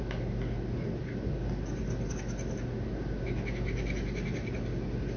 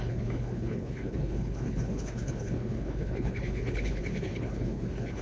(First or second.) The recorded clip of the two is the first